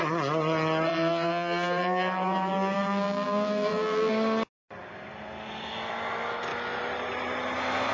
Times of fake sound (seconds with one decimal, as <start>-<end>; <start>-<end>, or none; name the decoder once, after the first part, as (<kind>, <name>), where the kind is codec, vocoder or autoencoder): 0.9-4.1 (vocoder, BigVGAN v2)